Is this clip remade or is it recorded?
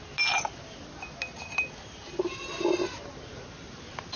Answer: recorded